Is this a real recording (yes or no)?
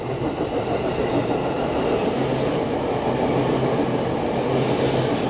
yes